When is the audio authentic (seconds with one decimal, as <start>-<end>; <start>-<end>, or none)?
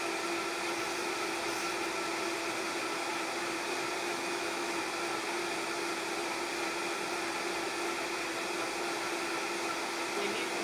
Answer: 0.0-4.1; 4.8-10.6